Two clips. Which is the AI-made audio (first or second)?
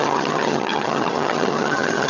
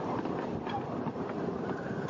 first